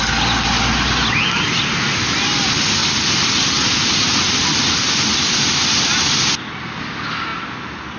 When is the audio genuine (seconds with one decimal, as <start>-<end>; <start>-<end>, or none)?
0.0-2.8; 4.9-8.0